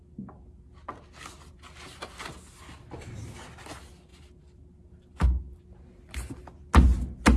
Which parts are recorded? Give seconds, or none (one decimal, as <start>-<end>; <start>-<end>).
0.0-7.4